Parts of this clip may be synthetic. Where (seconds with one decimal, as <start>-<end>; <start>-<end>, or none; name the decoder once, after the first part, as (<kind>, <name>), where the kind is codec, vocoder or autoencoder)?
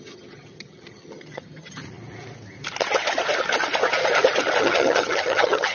0.0-1.8 (vocoder, HiFi-GAN); 4.6-5.7